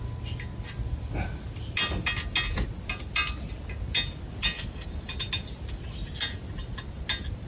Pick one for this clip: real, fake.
real